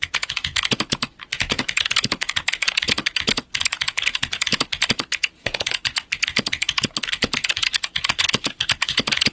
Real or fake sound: fake